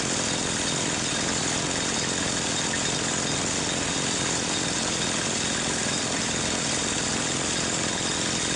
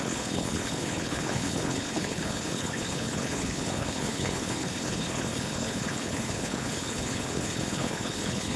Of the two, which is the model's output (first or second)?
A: second